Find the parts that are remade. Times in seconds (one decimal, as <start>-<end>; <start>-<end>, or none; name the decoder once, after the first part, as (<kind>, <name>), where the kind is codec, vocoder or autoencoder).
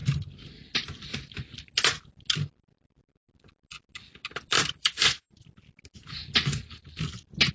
4.5-5.2 (vocoder, BigVGAN v2)